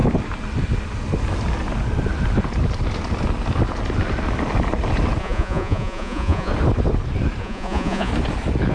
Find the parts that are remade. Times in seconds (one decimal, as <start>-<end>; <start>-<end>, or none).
5.2-6.5; 7.4-8.1